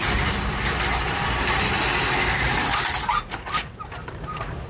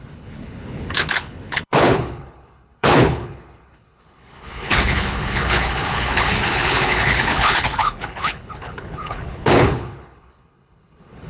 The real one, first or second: first